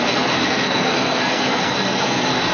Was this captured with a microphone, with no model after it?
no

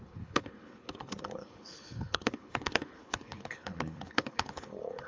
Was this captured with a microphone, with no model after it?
no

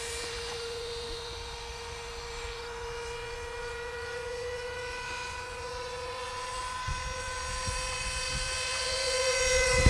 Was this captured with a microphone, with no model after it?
no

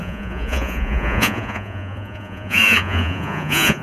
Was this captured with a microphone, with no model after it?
no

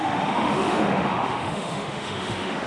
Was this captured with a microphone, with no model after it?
no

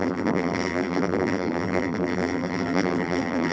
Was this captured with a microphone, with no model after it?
no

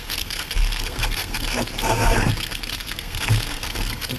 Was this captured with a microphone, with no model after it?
no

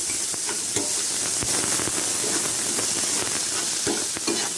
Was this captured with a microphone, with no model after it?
yes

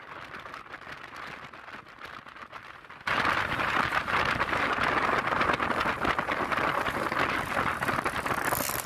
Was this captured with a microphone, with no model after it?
yes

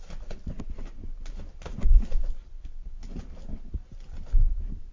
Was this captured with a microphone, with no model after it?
yes